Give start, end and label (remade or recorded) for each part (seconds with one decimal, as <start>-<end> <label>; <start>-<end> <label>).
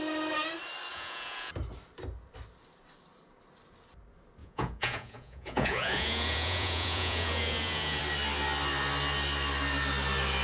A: 0.0-0.9 recorded; 0.9-1.5 remade; 1.5-4.4 recorded; 4.4-8.0 remade; 8.0-10.4 recorded